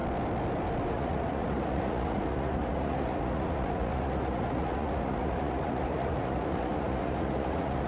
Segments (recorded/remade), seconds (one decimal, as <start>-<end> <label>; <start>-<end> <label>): 0.0-0.9 recorded; 0.9-7.9 remade